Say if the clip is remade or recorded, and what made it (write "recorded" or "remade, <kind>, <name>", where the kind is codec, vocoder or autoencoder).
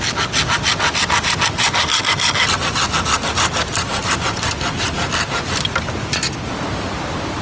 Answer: recorded